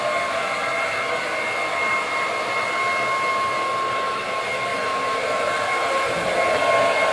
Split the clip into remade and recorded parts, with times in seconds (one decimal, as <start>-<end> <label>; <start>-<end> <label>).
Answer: 0.0-7.1 recorded